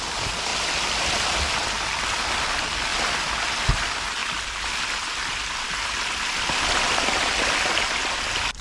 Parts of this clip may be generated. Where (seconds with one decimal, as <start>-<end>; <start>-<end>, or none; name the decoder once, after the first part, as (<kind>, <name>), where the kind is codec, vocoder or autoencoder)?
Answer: none